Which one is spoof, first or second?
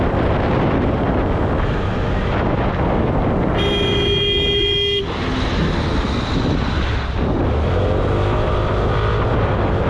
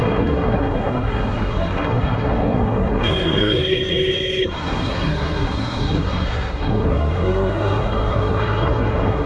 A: second